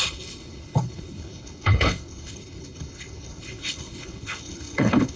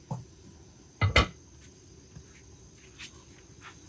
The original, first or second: second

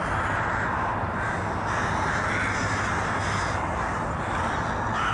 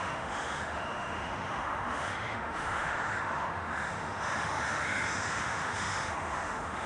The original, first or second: first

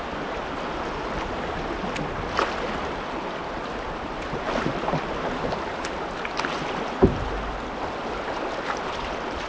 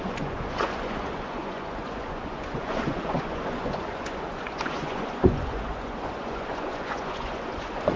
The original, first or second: first